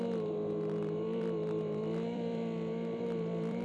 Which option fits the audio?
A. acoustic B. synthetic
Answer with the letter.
B